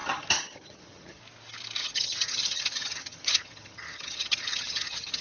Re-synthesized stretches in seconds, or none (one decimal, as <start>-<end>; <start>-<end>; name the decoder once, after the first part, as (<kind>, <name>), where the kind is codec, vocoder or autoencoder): 0.0-1.2 (vocoder, HiFi-GAN); 1.8-5.2